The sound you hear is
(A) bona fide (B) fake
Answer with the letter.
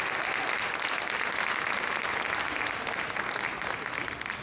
A